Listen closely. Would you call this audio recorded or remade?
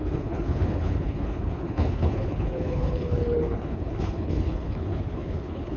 remade